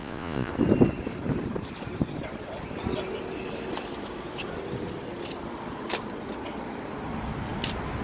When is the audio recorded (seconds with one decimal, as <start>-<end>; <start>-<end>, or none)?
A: 0.5-8.0